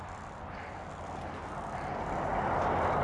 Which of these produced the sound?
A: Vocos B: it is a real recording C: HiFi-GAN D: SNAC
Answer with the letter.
B